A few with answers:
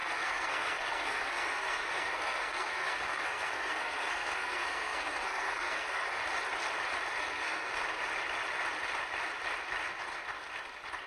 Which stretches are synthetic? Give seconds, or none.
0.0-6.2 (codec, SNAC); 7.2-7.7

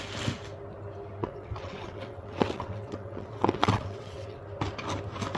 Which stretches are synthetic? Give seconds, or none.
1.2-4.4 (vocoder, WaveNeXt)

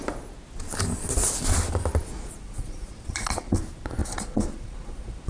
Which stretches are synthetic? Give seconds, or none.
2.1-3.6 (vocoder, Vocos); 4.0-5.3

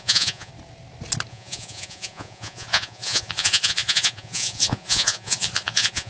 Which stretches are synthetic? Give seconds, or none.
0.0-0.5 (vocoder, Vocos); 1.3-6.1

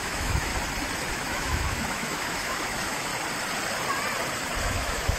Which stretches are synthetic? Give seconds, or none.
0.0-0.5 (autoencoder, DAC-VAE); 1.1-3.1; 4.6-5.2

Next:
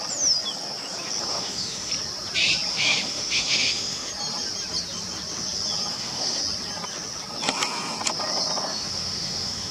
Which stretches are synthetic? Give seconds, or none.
1.3-1.9 (autoencoder, DAC-VAE); 2.7-4.1; 5.9-6.4; 8.7-9.7